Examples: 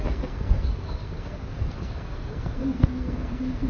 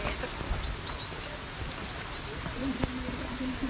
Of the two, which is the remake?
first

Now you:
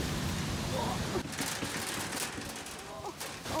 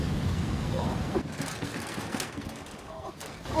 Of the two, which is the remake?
second